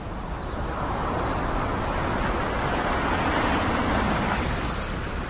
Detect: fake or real real